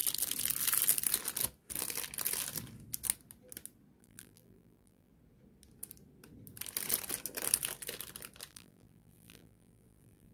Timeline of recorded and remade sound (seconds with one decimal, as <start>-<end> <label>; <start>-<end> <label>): 0.0-4.0 recorded; 4.0-5.1 remade; 5.1-8.5 recorded; 8.5-10.3 remade